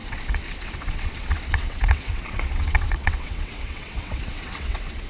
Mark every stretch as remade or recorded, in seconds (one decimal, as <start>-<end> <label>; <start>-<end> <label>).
0.0-5.1 remade